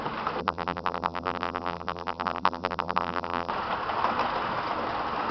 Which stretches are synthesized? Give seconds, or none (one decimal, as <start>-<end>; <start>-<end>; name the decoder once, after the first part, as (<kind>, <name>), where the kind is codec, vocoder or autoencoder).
0.4-3.5 (vocoder, BigVGAN v2)